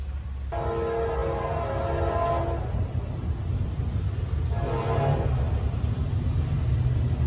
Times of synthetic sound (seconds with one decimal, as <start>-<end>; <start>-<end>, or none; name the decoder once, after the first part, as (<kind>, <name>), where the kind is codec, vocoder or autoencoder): none